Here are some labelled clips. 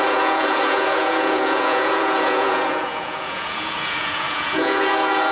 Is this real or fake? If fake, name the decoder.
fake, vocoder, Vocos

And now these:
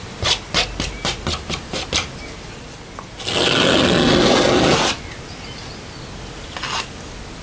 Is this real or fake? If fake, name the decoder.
real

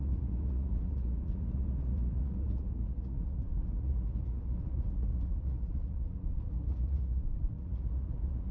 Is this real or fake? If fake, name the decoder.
fake, vocoder, Vocos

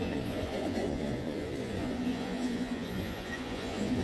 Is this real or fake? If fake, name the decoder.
fake, vocoder, Vocos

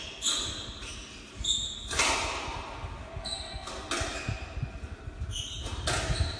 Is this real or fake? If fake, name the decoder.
real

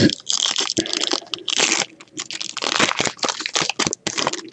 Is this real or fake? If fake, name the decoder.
real